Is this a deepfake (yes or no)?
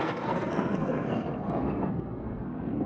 yes